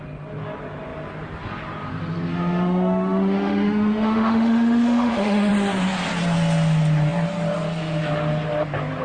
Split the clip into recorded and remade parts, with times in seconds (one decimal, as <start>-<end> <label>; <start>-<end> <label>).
0.0-2.3 recorded; 2.3-5.5 remade; 5.5-9.0 recorded